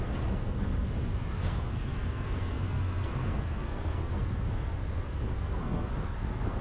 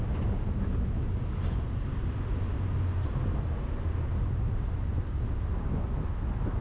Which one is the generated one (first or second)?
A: first